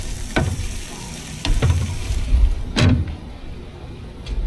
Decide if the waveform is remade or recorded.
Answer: remade